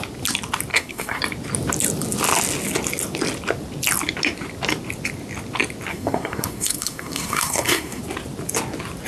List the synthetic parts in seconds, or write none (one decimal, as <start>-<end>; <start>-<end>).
0.7-1.2; 5.9-8.0